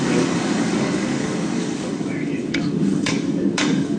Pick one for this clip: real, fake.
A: fake